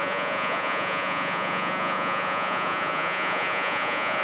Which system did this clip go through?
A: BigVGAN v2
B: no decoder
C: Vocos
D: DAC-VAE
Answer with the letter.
C